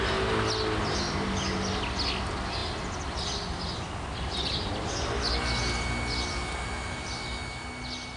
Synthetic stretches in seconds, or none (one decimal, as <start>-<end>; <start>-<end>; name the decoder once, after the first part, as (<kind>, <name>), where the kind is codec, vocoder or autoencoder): none